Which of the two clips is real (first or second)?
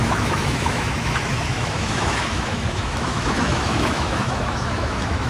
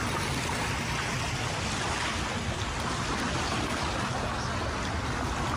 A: second